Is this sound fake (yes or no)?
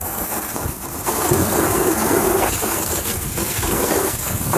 yes